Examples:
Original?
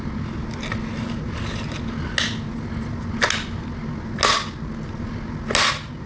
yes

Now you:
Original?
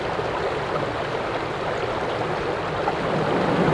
yes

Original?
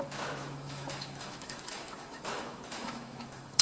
no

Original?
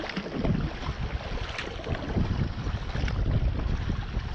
yes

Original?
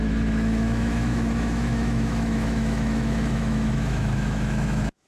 no